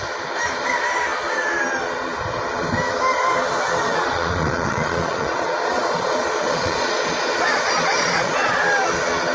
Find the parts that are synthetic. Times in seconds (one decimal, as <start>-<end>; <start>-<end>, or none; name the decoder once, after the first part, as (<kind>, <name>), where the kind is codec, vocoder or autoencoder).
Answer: 3.8-8.6 (vocoder, Vocos)